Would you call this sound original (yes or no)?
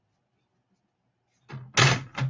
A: yes